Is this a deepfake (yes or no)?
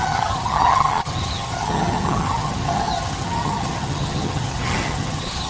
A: yes